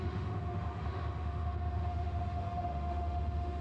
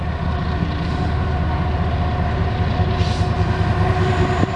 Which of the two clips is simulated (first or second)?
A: first